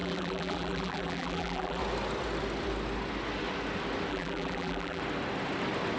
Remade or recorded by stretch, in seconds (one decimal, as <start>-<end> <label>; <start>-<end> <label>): 0.0-1.8 remade; 1.8-4.1 recorded; 4.1-5.0 remade; 5.0-6.0 recorded